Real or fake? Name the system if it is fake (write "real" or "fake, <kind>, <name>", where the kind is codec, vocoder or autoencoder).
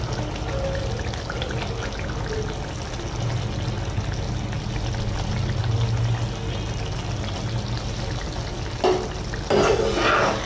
real